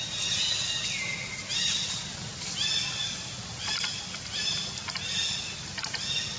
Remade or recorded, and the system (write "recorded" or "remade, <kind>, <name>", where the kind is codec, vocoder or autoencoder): recorded